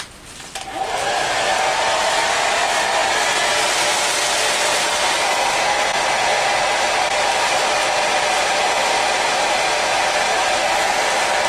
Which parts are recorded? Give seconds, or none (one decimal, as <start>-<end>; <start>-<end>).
0.0-11.5